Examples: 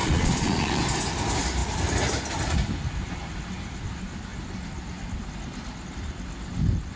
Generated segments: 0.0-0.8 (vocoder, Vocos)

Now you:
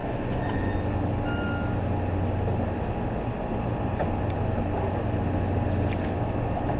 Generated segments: 0.0-0.7 (vocoder, Vocos)

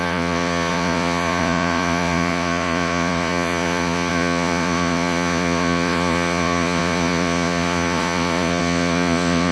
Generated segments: 0.0-9.5 (vocoder, Vocos)

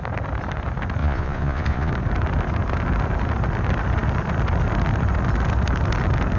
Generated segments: 1.0-1.9 (vocoder, Vocos)